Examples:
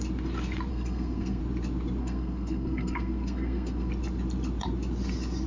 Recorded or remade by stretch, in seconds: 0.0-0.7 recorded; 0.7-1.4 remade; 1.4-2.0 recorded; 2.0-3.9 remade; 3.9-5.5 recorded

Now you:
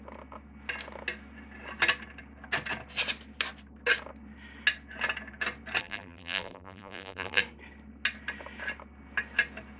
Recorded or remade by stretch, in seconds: 0.0-5.8 recorded; 5.8-7.4 remade; 7.4-9.8 recorded